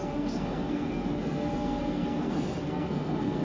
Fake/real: fake